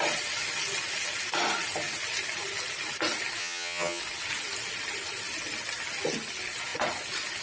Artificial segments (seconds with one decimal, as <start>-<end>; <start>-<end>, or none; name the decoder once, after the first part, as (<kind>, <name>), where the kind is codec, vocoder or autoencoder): 3.4-4.0 (vocoder, HiFi-GAN)